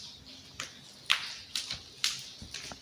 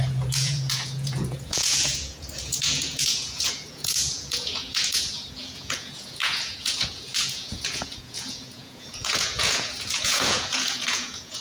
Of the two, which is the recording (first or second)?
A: first